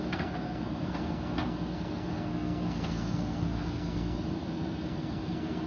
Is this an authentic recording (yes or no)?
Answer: no